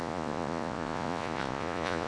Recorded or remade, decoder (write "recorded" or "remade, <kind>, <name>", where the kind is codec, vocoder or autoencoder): remade, vocoder, Vocos